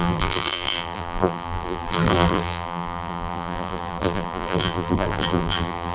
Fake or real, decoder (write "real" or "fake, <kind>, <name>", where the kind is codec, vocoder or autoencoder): fake, vocoder, BigVGAN v2